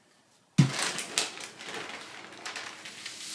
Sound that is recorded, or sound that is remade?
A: recorded